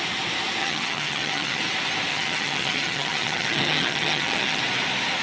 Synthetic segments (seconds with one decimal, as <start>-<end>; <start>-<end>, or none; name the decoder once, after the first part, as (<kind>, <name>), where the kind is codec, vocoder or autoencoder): 0.6-1.6 (vocoder, HiFi-GAN); 2.1-4.6